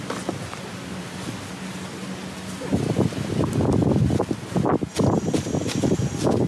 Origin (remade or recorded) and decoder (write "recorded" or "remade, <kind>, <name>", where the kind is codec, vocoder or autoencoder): recorded